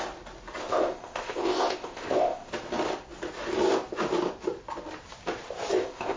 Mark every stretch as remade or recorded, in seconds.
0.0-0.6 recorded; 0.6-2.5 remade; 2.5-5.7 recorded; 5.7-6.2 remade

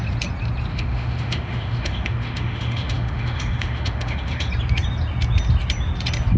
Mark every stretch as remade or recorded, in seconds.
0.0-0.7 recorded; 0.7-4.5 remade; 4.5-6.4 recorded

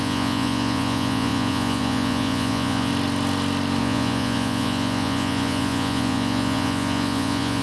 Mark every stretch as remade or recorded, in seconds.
0.0-2.9 remade; 2.9-3.8 recorded; 3.8-7.6 remade

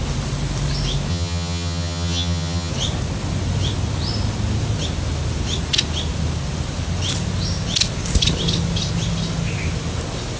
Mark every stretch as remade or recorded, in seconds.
0.0-1.1 recorded; 1.1-2.7 remade; 2.7-10.4 recorded

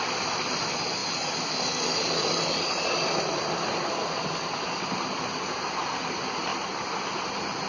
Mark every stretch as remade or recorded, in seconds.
0.0-7.7 recorded